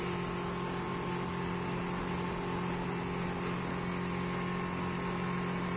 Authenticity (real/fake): real